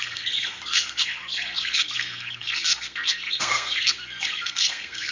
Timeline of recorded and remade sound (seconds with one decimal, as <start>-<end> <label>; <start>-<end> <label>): 0.0-5.1 remade